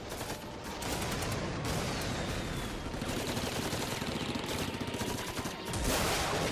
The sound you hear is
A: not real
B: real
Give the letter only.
B